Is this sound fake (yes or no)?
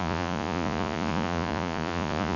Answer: yes